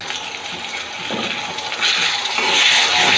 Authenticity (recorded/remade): recorded